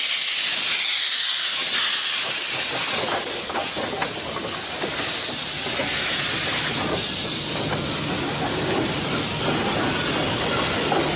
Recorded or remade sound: recorded